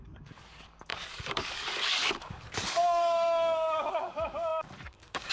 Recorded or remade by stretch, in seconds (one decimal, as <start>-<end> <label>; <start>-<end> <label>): 0.0-5.3 remade